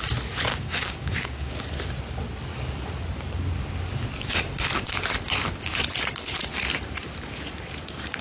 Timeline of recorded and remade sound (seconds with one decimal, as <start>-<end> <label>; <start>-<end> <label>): 0.0-0.5 recorded; 0.5-1.5 remade; 1.5-8.2 recorded